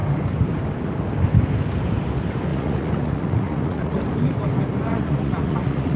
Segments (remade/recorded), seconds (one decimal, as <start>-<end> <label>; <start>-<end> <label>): 0.0-2.5 recorded; 2.5-4.0 remade; 4.0-4.9 recorded; 4.9-6.0 remade